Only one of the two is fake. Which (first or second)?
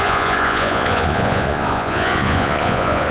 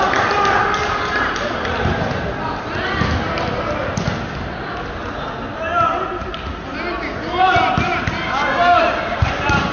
first